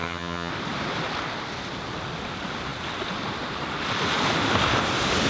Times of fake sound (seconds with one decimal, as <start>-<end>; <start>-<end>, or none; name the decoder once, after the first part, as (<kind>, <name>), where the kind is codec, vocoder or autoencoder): 0.0-0.5 (vocoder, HiFi-GAN)